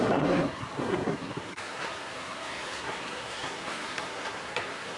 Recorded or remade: remade